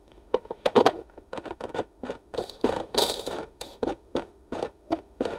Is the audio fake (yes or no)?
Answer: yes